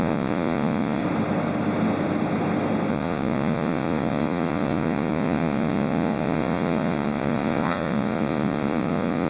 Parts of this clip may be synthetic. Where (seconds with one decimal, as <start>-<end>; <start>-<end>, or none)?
0.0-1.0; 2.9-9.3